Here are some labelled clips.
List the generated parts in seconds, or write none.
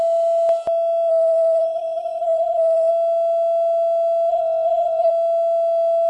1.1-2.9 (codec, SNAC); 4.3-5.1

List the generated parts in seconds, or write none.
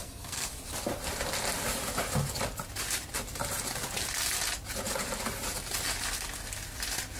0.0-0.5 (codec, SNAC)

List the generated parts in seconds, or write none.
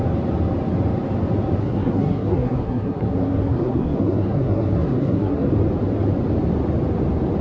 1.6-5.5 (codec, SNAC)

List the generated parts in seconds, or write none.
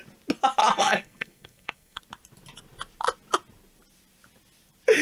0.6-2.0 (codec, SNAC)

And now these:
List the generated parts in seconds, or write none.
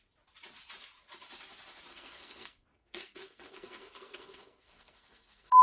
1.9-5.6 (codec, SNAC)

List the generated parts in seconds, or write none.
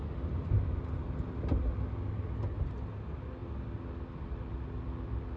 none